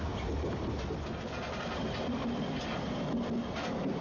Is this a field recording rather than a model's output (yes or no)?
yes